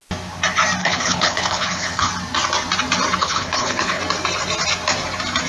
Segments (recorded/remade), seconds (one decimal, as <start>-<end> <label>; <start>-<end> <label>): 0.0-0.8 recorded; 0.8-2.1 remade; 2.1-3.2 recorded; 3.2-4.0 remade; 4.0-5.5 recorded